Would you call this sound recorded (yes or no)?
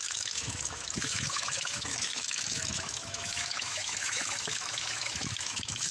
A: no